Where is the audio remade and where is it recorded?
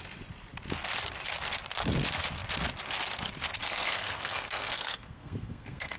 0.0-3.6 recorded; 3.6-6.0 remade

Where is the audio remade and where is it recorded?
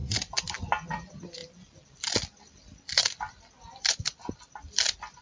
0.0-5.2 recorded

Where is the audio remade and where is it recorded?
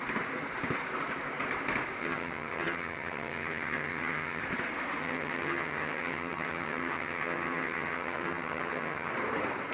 0.0-2.0 recorded; 2.0-4.4 remade; 4.4-5.0 recorded; 5.0-9.1 remade; 9.1-9.7 recorded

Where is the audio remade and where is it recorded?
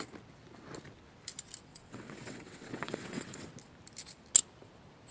0.0-1.7 recorded; 1.7-3.5 remade; 3.5-5.1 recorded